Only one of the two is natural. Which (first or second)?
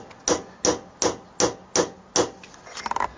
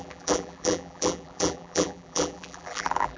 first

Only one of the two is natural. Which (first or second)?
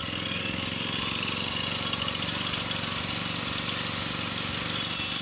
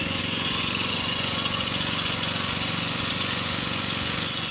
first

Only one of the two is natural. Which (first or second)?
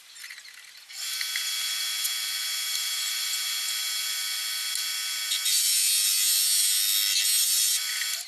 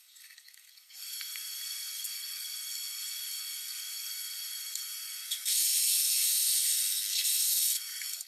first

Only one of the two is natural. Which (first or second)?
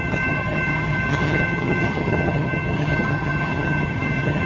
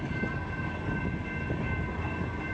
second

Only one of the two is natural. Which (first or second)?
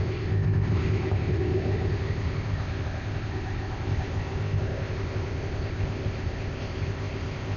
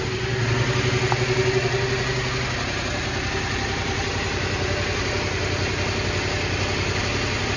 second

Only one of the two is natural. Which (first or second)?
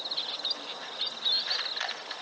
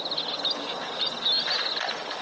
second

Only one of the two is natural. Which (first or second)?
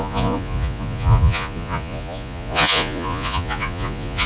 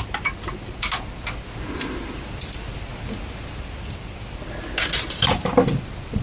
second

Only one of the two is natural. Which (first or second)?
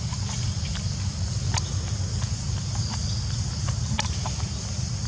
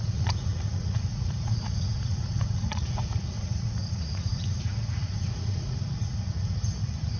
first